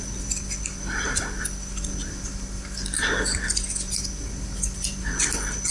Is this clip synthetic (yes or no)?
no